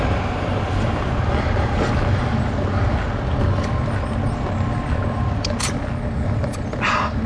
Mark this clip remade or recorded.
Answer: recorded